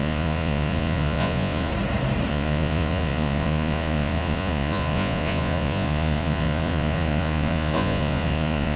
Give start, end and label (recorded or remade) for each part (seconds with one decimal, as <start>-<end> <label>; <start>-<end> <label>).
0.0-1.7 remade; 1.7-2.3 recorded; 2.3-8.8 remade